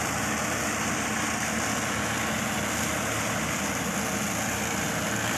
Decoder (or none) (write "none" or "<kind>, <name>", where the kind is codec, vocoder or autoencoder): none